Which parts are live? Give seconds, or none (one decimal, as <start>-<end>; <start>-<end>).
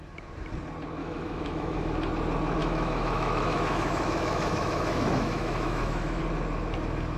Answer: 0.0-1.0; 1.9-2.6; 6.2-7.2